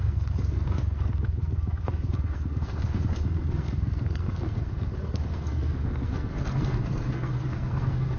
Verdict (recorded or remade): remade